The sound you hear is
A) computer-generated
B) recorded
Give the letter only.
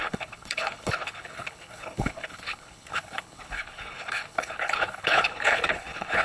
A